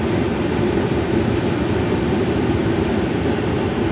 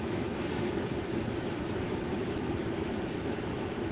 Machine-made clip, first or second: second